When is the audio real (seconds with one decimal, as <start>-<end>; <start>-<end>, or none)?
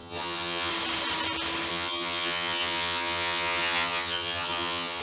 0.7-1.7